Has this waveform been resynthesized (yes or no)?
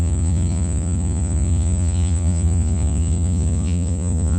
yes